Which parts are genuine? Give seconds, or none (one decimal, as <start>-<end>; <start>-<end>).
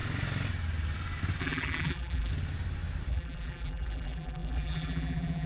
0.0-1.4; 2.3-3.1